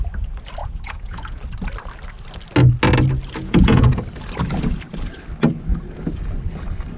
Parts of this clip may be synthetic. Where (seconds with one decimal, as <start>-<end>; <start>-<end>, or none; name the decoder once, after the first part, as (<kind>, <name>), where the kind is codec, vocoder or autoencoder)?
0.6-1.4 (vocoder, Vocos); 3.4-4.0